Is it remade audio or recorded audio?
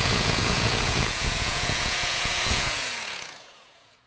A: remade